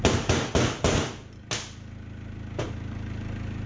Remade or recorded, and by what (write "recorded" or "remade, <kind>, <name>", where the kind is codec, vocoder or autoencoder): recorded